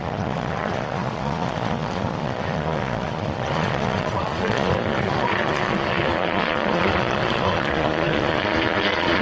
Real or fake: fake